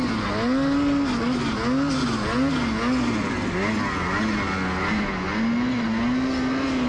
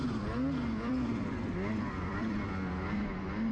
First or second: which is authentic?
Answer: first